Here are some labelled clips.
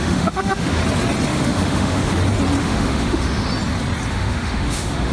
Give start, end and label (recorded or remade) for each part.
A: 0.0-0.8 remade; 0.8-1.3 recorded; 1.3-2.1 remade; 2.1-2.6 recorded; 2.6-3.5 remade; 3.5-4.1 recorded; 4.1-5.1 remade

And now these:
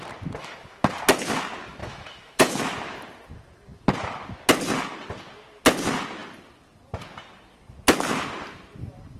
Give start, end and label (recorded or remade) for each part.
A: 0.0-0.4 recorded; 0.4-0.9 remade; 0.9-1.8 recorded; 1.8-2.6 remade; 2.6-9.2 recorded

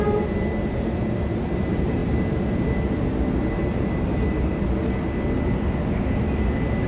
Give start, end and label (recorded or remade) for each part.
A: 0.0-6.9 recorded

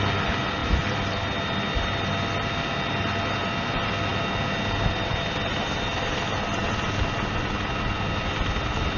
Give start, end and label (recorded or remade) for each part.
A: 0.0-9.0 recorded

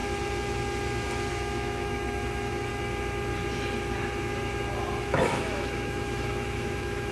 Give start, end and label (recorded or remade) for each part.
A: 0.0-1.3 recorded; 1.3-2.7 remade; 2.7-5.0 recorded; 5.0-7.1 remade